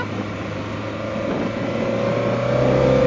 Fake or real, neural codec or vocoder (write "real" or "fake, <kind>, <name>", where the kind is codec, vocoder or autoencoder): real